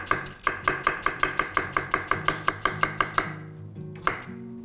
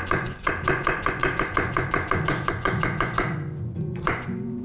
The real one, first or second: first